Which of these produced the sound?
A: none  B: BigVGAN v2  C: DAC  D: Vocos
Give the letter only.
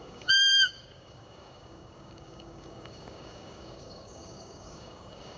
C